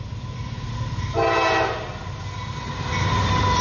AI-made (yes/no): no